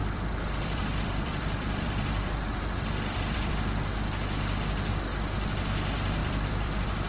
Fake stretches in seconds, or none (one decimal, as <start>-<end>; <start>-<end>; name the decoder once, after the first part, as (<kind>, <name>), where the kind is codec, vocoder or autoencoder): 0.0-3.5 (vocoder, BigVGAN v2); 6.2-7.1